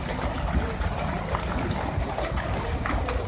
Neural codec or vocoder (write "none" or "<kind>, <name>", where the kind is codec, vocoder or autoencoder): none